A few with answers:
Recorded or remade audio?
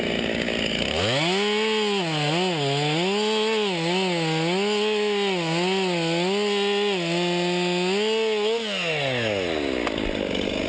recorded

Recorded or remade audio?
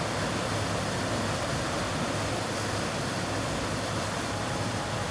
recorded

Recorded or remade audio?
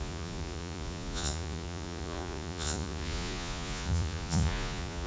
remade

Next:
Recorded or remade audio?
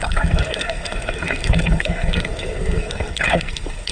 remade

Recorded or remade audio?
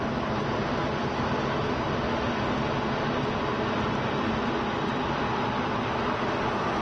recorded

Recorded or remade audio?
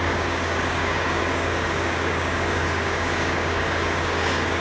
remade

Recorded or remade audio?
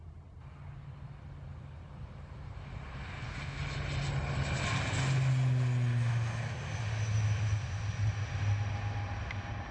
recorded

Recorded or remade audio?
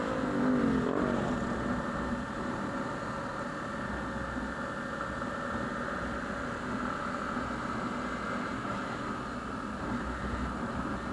recorded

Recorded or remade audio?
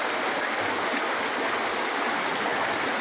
recorded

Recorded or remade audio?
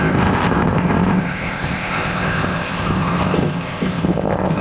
remade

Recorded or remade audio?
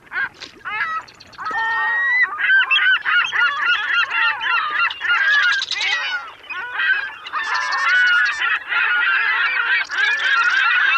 recorded